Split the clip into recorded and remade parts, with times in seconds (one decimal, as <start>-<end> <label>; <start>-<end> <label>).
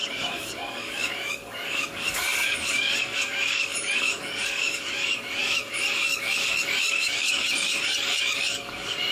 0.0-9.1 remade